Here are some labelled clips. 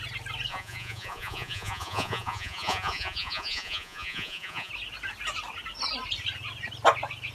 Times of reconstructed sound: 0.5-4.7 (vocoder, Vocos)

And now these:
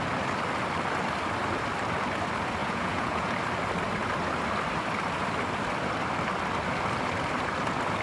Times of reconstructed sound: 2.6-3.3 (vocoder, Vocos)

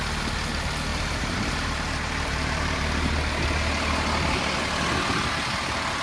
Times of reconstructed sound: 0.9-3.1 (vocoder, BigVGAN v2)

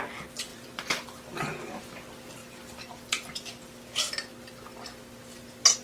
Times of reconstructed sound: 0.5-1.8 (vocoder, BigVGAN v2); 2.4-4.1

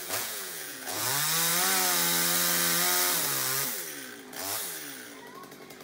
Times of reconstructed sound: 0.0-1.1 (vocoder, Vocos)

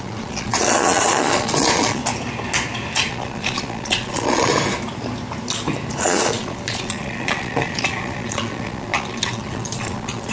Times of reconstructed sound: 0.0-2.0 (vocoder, Vocos); 3.1-4.5; 6.0-10.3

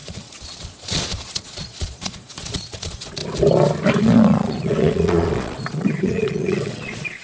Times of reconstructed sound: 0.0-3.2 (vocoder, Vocos); 4.0-7.2